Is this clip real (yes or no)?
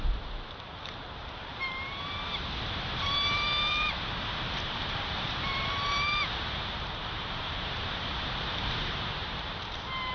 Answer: no